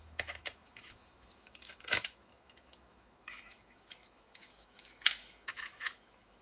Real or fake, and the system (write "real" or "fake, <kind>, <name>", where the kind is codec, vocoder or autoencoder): fake, autoencoder, DAC-VAE